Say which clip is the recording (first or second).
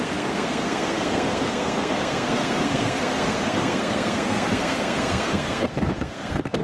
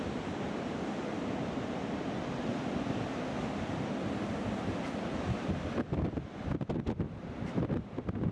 second